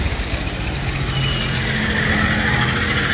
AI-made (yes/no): no